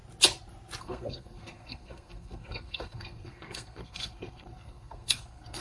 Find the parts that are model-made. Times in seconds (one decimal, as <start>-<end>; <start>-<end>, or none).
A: 0.8-5.6